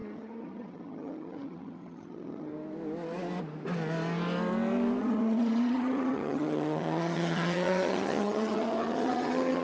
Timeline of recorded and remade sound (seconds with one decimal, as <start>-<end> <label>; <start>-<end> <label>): 0.0-2.5 remade; 2.5-5.0 recorded; 5.0-9.6 remade